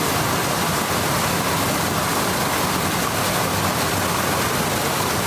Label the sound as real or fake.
real